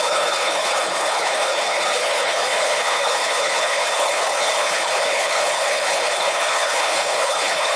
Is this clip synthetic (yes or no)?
yes